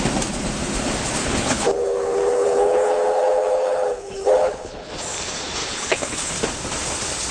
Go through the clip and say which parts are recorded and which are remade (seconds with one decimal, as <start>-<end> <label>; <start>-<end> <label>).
0.0-1.2 recorded; 1.2-4.9 remade; 4.9-5.6 recorded; 5.6-6.3 remade; 6.3-7.3 recorded